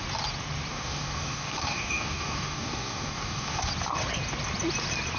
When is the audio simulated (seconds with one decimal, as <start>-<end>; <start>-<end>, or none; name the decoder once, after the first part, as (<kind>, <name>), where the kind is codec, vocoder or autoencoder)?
0.7-3.7 (codec, DAC)